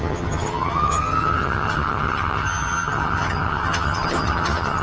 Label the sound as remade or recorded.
remade